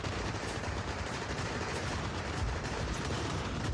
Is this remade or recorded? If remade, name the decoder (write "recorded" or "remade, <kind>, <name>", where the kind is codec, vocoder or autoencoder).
remade, vocoder, BigVGAN v2